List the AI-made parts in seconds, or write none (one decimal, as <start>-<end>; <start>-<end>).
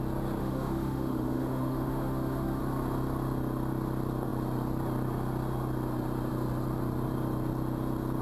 0.4-2.6